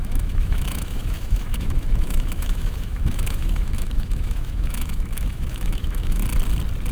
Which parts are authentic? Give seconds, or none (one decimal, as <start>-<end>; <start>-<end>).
6.2-6.9